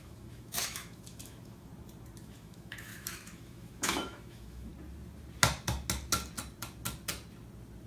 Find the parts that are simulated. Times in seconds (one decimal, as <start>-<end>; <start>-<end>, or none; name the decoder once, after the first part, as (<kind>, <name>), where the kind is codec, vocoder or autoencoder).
0.0-1.7 (autoencoder, DAC-VAE); 2.2-4.7